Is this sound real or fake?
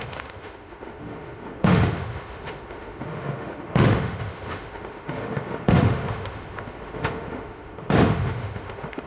fake